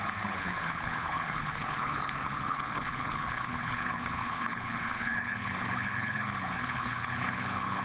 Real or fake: fake